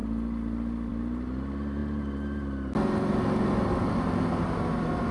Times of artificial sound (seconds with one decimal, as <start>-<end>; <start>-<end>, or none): none